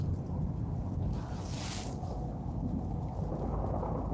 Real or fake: real